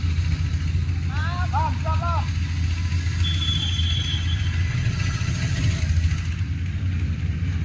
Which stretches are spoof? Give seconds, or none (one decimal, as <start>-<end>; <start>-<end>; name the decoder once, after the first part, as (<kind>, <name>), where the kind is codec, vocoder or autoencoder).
4.7-5.8 (vocoder, HiFi-GAN)